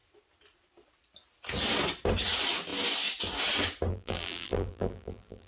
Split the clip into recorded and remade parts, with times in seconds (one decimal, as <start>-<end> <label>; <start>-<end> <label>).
0.0-3.9 recorded; 3.9-5.5 remade